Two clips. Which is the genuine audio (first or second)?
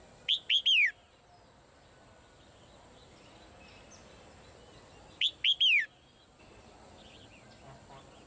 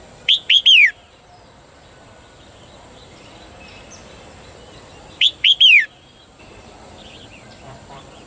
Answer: first